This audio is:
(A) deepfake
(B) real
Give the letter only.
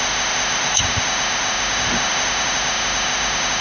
A